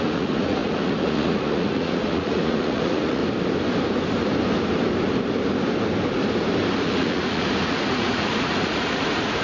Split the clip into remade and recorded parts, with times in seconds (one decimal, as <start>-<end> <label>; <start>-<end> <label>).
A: 0.0-3.2 remade; 3.2-6.8 recorded; 6.8-9.4 remade